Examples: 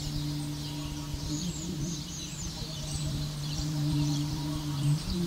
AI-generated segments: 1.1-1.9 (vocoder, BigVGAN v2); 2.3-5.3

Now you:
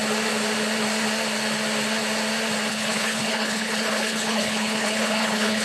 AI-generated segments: 2.7-5.6 (codec, HILCodec)

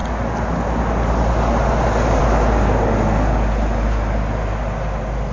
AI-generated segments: none

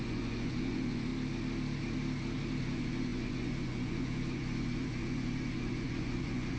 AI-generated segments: 0.0-1.1 (vocoder, Vocos); 2.6-6.6

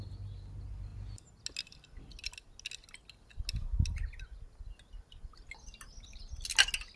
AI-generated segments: none